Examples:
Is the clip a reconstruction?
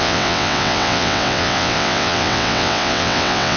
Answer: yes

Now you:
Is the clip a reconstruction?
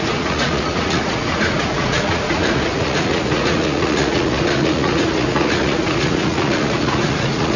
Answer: yes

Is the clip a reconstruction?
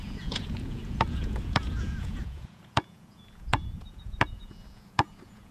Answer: yes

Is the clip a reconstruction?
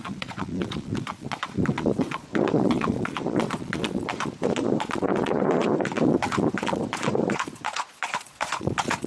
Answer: yes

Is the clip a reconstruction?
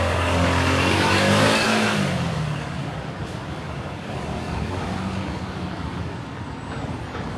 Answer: yes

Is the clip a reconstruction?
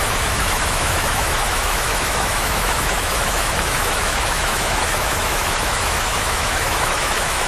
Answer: yes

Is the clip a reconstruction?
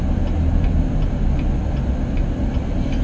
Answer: no